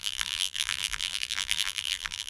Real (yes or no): no